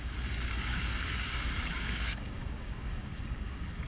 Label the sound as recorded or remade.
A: remade